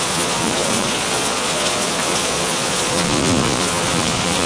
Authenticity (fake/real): fake